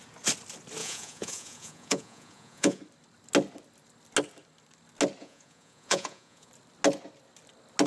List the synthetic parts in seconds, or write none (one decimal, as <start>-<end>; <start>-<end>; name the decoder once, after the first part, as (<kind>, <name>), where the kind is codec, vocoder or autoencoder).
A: 0.8-2.8 (vocoder, Vocos); 5.2-6.5